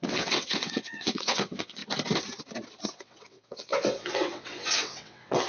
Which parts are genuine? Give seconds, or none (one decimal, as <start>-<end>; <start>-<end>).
1.8-2.9